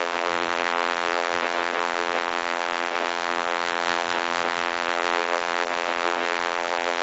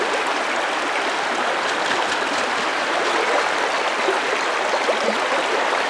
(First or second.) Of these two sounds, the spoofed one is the first